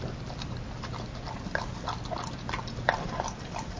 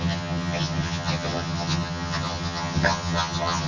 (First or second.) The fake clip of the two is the second